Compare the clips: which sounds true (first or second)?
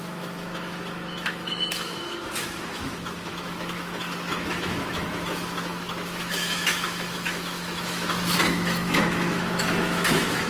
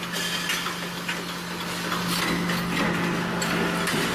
second